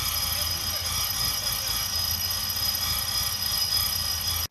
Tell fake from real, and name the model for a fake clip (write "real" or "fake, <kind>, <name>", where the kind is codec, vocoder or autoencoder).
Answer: real